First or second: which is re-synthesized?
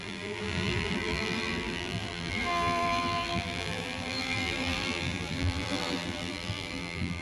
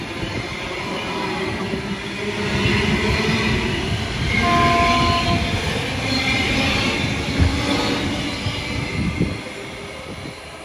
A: first